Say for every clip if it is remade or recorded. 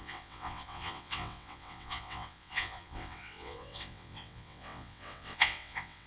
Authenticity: remade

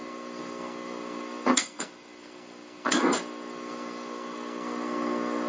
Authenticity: remade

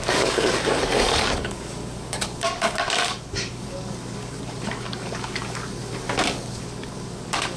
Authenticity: remade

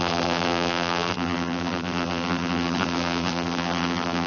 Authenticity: remade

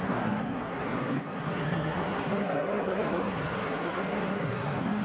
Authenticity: remade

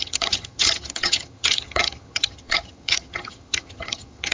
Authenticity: remade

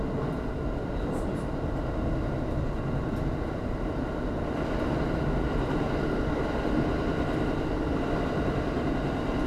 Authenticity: recorded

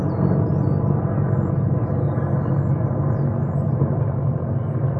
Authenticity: recorded